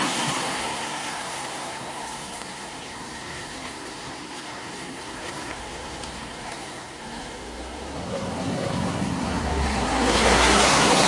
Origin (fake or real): fake